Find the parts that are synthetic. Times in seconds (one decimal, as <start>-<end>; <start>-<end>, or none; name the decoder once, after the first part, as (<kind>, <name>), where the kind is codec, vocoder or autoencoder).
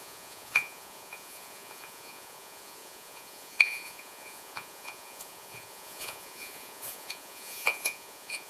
0.0-8.5 (vocoder, Vocos)